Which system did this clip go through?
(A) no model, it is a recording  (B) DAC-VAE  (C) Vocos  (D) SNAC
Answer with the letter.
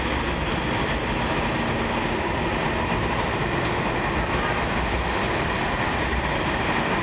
A